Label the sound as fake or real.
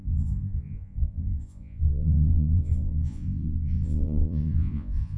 fake